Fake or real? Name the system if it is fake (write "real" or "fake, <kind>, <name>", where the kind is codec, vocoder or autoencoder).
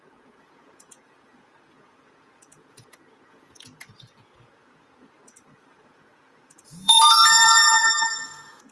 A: fake, vocoder, Vocos